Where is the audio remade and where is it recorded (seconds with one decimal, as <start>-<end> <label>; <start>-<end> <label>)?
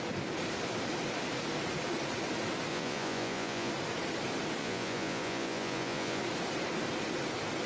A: 0.0-2.7 recorded; 2.7-3.7 remade; 3.7-4.6 recorded; 4.6-6.2 remade; 6.2-7.7 recorded